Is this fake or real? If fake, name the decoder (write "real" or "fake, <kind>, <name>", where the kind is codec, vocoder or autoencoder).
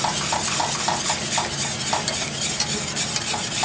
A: real